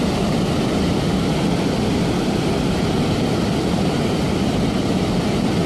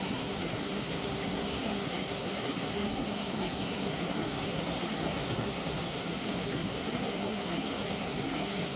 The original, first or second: first